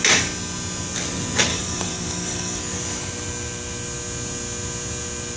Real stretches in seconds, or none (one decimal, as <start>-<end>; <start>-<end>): 0.0-1.5; 2.6-5.4